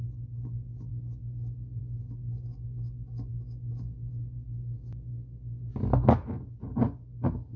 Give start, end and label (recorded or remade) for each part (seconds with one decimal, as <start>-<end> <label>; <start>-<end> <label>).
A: 0.0-7.6 recorded